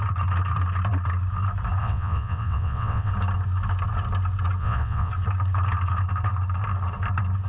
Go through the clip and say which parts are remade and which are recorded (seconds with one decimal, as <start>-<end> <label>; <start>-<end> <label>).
0.0-1.8 recorded; 1.8-3.1 remade; 3.1-4.6 recorded; 4.6-5.1 remade; 5.1-7.5 recorded